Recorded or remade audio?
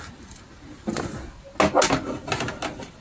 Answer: recorded